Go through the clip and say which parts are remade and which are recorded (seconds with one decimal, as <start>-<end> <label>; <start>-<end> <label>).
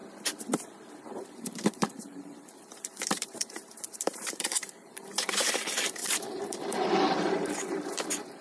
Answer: 0.0-0.9 recorded; 0.9-8.4 remade